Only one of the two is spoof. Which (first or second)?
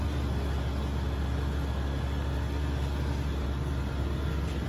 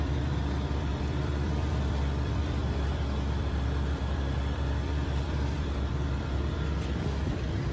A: second